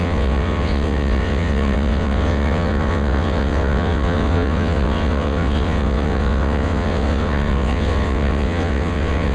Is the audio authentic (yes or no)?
no